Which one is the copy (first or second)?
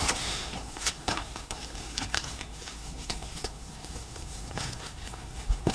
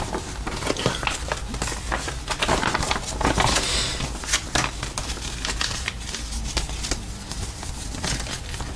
first